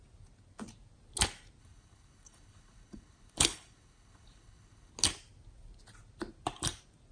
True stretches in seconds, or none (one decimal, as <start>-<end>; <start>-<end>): 0.0-1.6; 4.9-7.1